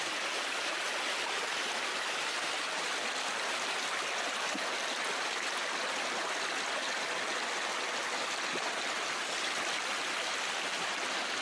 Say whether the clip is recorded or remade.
recorded